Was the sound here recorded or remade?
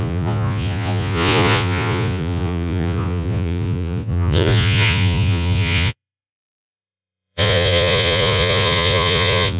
remade